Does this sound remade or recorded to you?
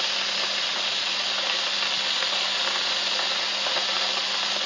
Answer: recorded